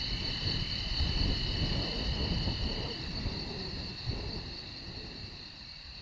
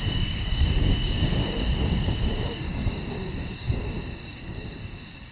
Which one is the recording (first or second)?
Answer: first